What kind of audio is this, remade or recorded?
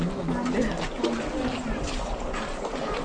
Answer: recorded